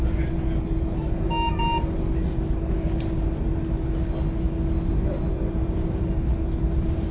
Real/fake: real